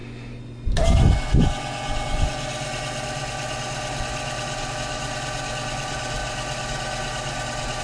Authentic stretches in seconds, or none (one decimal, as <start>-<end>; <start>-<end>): 0.0-7.8